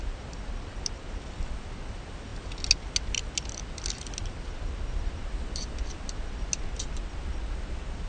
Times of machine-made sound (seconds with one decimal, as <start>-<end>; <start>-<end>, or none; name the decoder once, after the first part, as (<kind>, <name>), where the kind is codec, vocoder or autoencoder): none